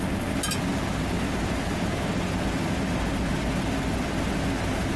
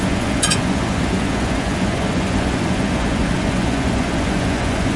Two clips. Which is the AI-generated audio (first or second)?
second